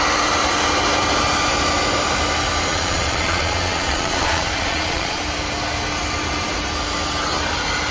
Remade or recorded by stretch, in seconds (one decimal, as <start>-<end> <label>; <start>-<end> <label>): 0.0-2.7 recorded; 2.7-5.2 remade; 5.2-7.9 recorded